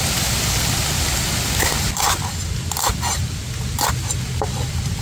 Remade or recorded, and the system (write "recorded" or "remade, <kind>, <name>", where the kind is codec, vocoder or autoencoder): recorded